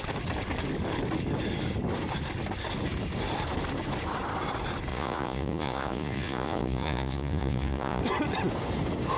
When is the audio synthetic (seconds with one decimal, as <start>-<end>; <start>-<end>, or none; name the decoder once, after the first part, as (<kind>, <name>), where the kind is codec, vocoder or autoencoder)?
4.9-8.0 (vocoder, Vocos)

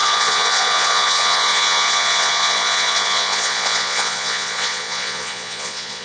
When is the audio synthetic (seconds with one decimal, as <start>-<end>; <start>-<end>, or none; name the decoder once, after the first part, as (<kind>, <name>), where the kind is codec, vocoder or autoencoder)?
0.0-6.0 (vocoder, Vocos)

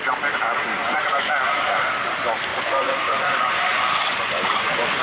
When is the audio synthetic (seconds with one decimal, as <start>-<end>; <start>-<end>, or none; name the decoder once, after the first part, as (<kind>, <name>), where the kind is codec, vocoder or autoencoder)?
0.8-1.3 (vocoder, Vocos); 2.5-5.0

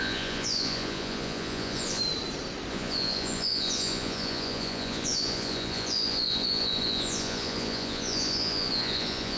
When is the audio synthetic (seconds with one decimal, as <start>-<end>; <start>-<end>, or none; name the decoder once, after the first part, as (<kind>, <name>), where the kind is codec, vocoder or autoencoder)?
0.0-2.0 (vocoder, Vocos); 2.7-9.4

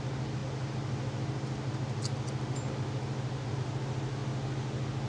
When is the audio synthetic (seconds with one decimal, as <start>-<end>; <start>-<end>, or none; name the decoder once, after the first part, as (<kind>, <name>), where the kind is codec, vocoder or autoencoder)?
none